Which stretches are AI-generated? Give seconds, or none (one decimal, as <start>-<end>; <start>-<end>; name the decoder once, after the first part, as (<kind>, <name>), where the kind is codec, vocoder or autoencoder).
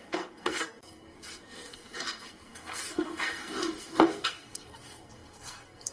0.0-5.9 (codec, SNAC)